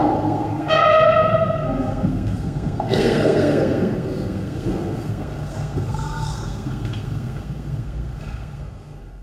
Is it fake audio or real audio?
fake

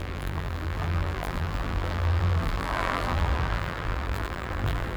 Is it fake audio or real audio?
fake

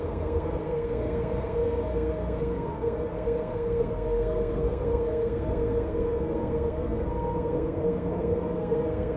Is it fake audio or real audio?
fake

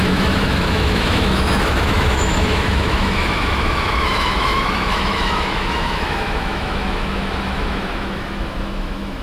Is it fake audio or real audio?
fake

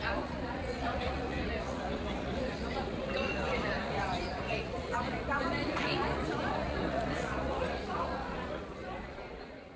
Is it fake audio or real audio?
fake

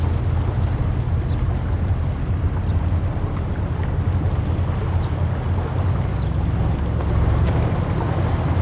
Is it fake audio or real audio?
real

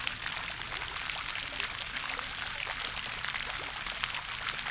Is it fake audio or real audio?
real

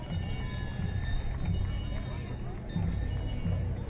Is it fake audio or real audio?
real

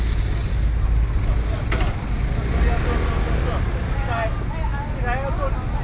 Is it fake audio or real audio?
real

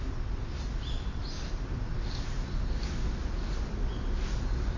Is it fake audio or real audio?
real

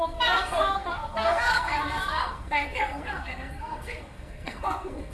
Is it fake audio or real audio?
fake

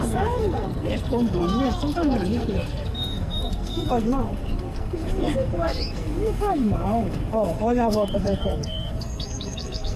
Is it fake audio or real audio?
fake